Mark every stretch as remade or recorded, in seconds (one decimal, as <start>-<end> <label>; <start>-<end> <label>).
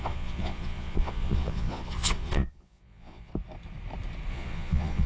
0.0-3.3 remade; 3.3-4.3 recorded; 4.3-5.1 remade